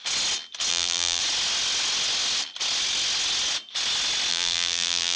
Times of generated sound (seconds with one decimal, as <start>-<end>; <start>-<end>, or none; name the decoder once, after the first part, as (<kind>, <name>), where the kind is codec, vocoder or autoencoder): 0.7-1.2 (vocoder, BigVGAN v2); 4.3-5.2